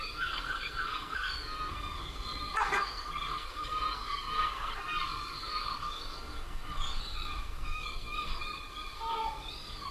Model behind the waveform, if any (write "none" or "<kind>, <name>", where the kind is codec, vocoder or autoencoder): codec, SNAC